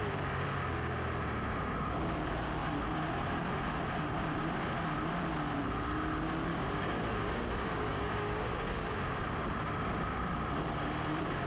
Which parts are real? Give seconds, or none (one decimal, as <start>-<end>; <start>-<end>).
0.0-6.5; 9.2-11.5